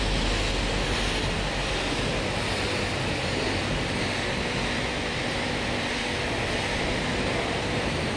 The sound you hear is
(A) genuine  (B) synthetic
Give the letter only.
A